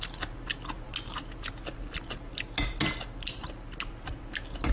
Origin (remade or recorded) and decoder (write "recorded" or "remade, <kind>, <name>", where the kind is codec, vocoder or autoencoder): recorded